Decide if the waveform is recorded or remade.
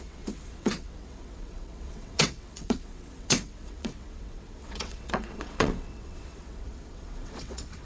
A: remade